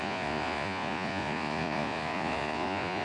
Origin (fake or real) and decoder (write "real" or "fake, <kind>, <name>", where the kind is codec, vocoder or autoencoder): fake, vocoder, Vocos